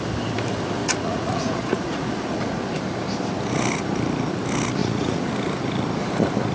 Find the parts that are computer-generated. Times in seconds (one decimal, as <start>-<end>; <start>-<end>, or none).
0.8-2.6; 4.8-5.3